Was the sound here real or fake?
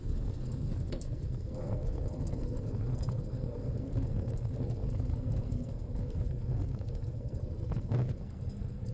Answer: fake